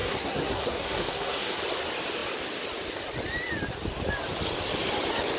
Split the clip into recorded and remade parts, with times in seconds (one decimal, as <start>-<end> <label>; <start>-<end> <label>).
0.0-1.6 remade; 1.6-5.4 recorded